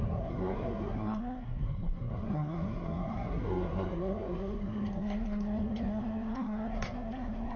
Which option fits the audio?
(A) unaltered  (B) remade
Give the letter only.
B